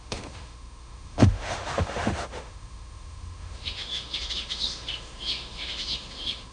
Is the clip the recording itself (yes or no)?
no